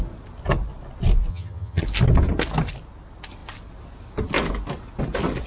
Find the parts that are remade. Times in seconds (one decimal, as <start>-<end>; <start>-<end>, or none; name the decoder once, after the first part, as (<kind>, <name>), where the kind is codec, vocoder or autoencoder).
1.3-1.8 (vocoder, HiFi-GAN)